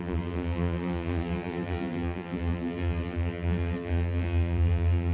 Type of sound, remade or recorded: remade